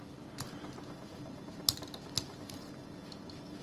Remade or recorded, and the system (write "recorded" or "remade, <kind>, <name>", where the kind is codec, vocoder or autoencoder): recorded